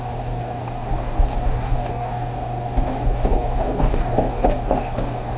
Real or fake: fake